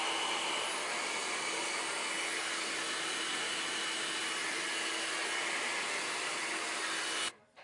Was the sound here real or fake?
real